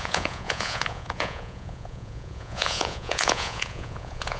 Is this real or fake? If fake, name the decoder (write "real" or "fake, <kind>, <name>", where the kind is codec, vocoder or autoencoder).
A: fake, vocoder, Vocos